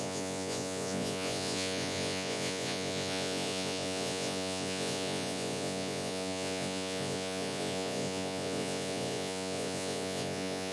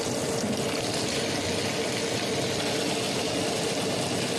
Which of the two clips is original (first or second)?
second